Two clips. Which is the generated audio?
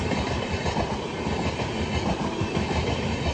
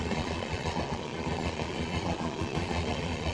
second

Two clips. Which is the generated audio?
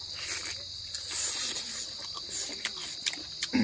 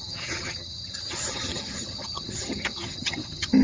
second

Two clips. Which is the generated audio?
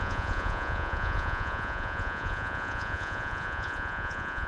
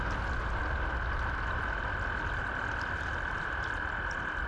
first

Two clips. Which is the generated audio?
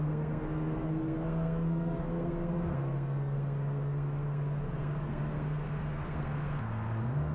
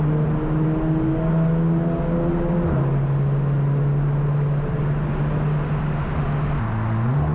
first